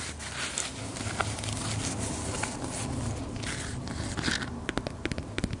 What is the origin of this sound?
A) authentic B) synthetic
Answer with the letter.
A